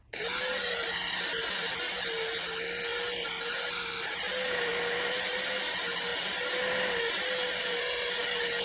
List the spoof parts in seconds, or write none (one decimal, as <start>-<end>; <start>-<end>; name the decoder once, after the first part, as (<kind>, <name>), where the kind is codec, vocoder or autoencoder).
none

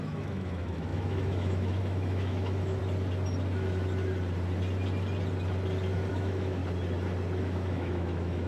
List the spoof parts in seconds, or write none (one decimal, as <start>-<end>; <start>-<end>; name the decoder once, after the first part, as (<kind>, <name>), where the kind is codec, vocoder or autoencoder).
0.0-2.8 (autoencoder, DAC-VAE); 6.1-6.6; 7.4-8.5

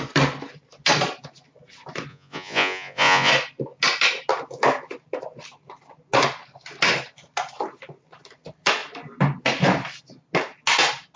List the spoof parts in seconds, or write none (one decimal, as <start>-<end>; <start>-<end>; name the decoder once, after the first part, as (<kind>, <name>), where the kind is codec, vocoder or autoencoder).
2.1-3.3 (vocoder, Vocos)

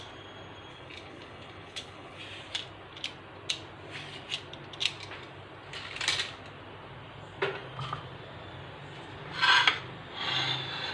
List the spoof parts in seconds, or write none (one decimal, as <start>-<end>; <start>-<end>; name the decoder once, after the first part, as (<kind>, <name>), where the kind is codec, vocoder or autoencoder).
0.7-2.2 (codec, HILCodec)